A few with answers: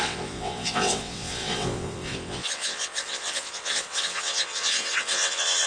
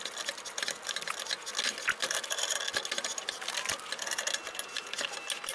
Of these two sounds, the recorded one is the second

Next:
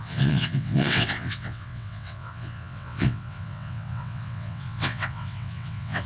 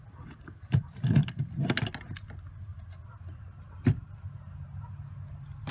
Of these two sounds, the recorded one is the second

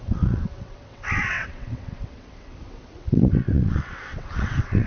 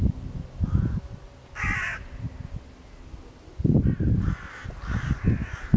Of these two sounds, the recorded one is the second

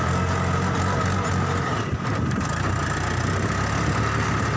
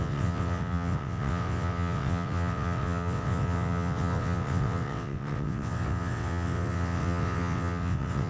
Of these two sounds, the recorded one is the first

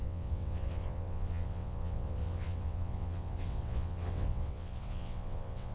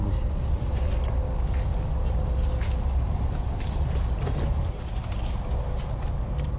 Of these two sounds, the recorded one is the second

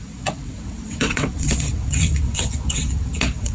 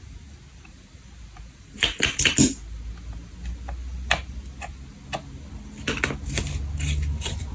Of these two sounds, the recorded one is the second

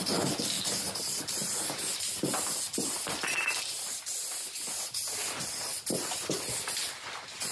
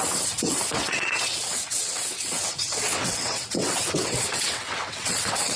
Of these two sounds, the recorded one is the first